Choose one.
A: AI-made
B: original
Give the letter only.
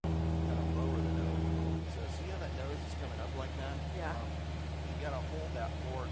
B